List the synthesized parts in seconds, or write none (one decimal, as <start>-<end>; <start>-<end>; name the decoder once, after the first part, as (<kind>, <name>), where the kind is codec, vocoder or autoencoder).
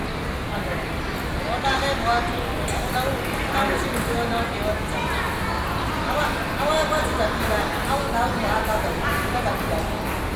none